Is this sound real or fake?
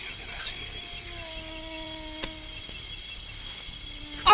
real